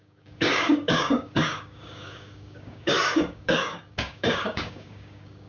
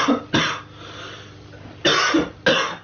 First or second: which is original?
second